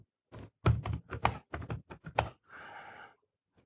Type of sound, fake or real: real